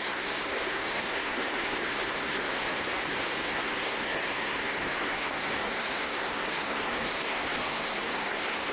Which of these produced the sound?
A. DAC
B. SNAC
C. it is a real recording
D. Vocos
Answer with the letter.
B